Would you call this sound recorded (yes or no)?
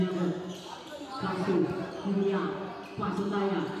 yes